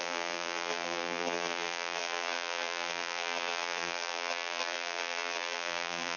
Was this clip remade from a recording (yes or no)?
yes